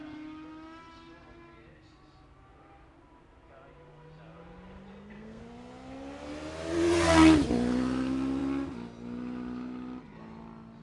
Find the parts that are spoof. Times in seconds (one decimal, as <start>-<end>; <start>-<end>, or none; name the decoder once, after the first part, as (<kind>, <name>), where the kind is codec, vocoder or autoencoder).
4.9-5.4 (codec, SNAC)